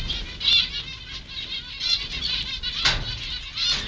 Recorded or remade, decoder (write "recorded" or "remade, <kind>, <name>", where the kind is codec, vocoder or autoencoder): recorded